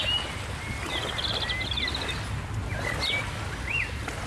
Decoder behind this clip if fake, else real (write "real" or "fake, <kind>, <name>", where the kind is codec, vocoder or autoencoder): real